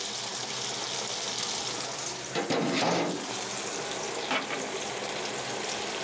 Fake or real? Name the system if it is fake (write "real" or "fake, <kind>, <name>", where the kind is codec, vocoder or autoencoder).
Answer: real